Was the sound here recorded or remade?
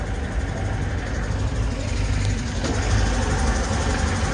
recorded